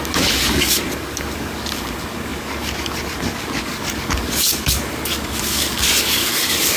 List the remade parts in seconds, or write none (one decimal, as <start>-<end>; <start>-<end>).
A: 0.0-6.8